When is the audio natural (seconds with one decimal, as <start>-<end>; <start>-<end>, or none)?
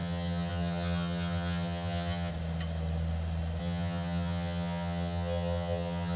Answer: 2.3-3.6